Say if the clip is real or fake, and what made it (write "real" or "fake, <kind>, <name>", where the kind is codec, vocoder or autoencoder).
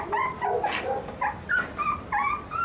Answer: real